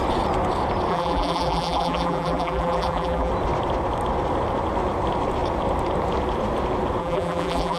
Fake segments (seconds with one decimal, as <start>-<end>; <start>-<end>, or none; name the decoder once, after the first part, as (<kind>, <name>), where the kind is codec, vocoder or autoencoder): 0.9-3.3 (vocoder, BigVGAN v2); 7.0-7.8